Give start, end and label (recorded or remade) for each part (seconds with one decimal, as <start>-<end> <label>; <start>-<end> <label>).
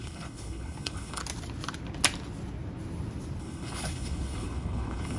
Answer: 0.0-1.2 remade; 1.2-3.4 recorded; 3.4-5.2 remade